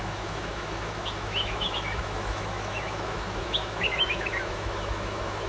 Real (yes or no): no